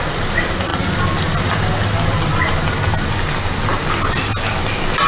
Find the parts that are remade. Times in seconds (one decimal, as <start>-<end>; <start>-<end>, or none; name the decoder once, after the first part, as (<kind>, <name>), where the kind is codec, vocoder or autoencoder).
none